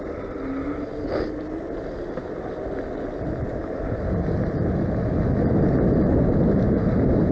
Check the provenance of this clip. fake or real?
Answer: real